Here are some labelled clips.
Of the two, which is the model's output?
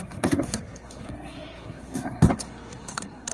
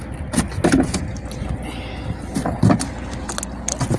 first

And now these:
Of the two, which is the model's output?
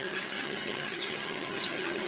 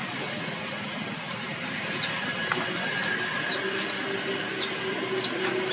first